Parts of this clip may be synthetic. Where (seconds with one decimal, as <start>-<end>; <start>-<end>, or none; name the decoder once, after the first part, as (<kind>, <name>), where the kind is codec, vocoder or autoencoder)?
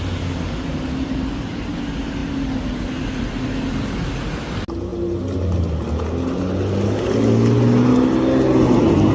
none